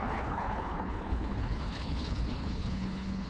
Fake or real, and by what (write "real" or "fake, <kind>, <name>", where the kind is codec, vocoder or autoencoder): fake, codec, HILCodec